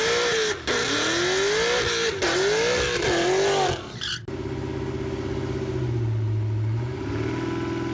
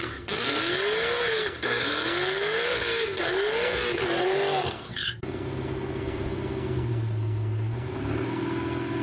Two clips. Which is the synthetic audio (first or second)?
second